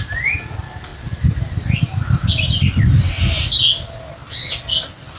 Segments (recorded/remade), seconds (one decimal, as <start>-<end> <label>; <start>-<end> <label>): 0.0-5.2 recorded